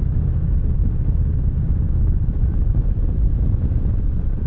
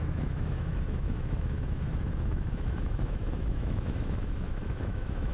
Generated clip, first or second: second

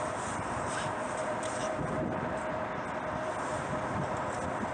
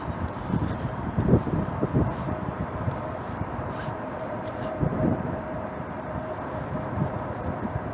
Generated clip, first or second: second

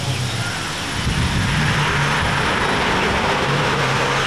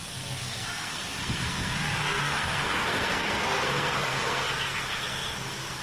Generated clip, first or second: second